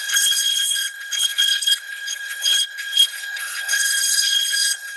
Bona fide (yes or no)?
no